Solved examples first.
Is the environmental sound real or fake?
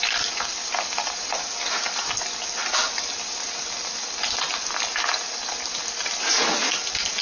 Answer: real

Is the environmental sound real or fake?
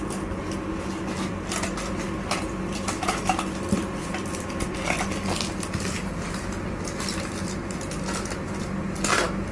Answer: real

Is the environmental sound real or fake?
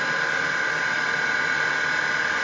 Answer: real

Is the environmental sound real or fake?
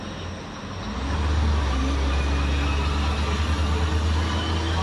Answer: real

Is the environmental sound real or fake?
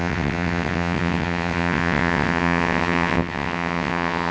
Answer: fake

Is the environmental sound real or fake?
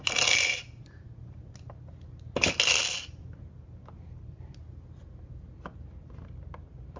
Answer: real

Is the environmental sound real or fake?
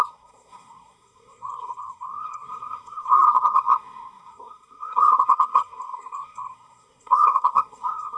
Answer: fake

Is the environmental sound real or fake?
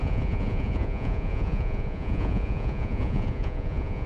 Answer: fake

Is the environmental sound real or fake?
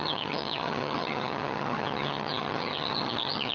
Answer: fake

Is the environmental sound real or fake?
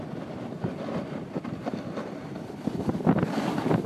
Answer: fake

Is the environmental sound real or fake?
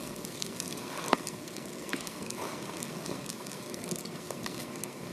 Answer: fake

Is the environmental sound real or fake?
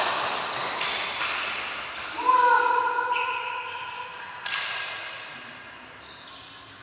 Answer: real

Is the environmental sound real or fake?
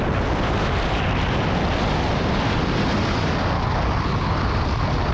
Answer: real